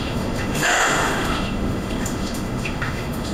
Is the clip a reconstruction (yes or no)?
yes